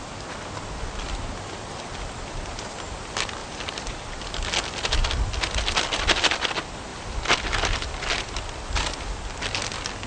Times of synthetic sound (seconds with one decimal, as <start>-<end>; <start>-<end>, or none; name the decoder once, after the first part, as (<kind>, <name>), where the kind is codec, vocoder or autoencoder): 3.4-4.3 (vocoder, BigVGAN v2); 6.9-8.2